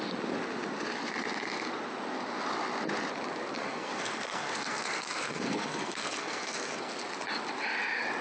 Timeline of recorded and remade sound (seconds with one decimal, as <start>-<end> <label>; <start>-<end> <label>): 0.0-3.6 recorded; 3.6-6.9 remade; 6.9-8.2 recorded